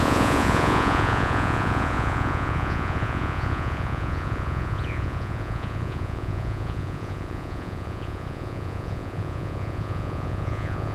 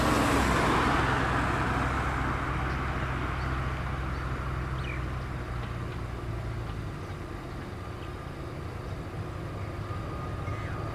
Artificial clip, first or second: first